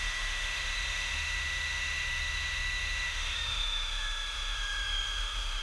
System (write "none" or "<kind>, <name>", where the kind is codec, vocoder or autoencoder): autoencoder, DAC-VAE